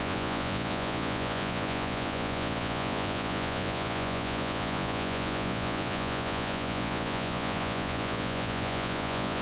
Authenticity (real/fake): fake